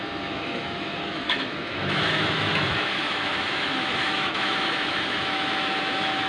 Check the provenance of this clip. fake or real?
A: fake